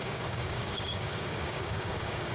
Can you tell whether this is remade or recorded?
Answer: remade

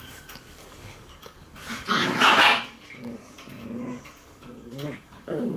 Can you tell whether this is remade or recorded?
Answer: remade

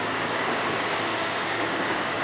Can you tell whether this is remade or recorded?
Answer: remade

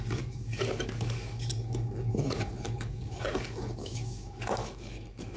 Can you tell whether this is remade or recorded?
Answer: remade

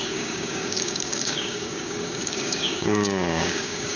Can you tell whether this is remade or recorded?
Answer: remade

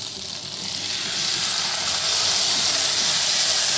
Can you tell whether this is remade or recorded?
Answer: recorded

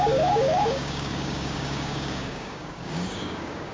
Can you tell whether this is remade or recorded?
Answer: remade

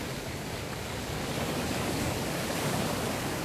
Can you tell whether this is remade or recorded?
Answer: remade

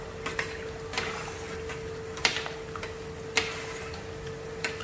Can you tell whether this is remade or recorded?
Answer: recorded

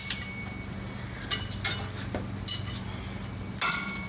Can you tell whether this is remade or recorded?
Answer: recorded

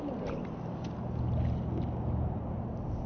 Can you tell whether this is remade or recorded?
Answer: recorded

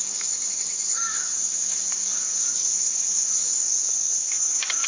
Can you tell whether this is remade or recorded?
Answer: remade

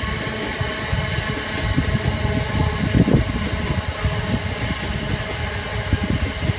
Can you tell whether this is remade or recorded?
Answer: recorded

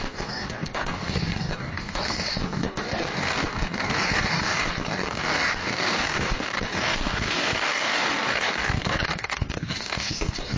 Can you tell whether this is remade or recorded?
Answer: remade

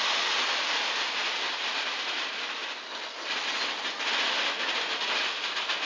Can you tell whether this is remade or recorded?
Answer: recorded